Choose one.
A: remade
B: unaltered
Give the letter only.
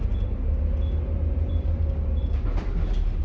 B